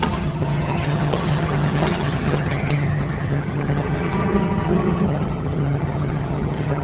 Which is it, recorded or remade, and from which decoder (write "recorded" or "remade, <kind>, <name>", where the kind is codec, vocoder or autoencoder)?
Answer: remade, vocoder, HiFi-GAN